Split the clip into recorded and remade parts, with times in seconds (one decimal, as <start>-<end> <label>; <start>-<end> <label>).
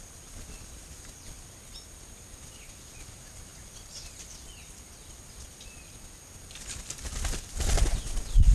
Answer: 0.0-8.5 recorded